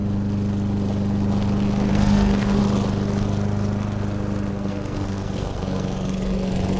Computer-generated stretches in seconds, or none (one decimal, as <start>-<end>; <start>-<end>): 1.9-2.6; 4.5-6.8